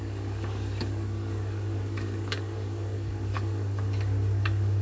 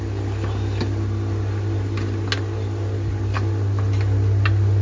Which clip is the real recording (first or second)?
second